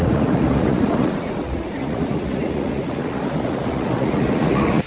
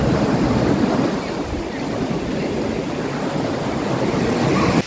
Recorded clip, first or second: second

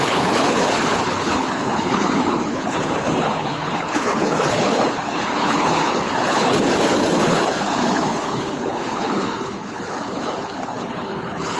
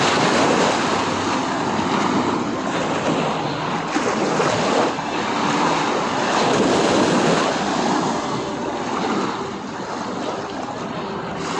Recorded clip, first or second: second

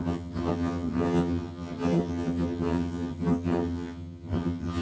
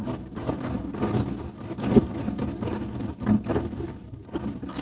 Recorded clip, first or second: second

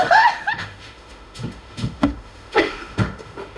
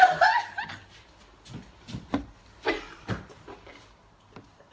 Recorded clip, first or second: second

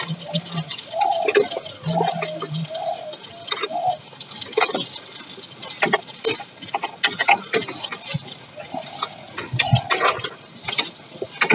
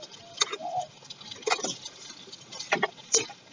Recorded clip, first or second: first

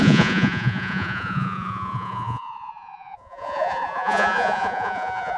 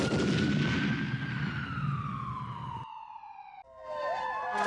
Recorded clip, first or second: second